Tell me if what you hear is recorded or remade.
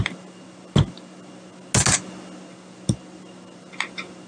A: recorded